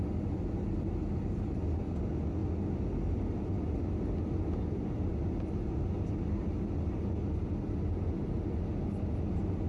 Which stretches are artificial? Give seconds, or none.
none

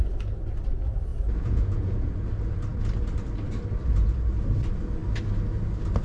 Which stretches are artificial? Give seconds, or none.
1.1-2.1

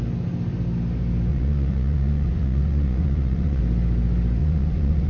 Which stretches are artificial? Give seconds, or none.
1.3-3.6; 4.4-5.1

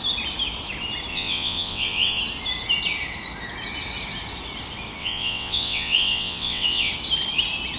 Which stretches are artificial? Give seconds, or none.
1.1-2.2; 5.0-6.9

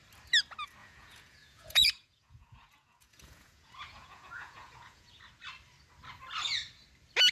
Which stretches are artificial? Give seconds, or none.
0.8-5.2

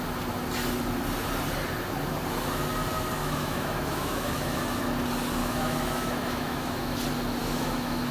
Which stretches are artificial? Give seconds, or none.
3.2-4.6; 5.4-7.0; 7.4-8.1

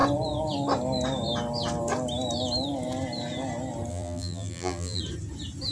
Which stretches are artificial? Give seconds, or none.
3.9-5.0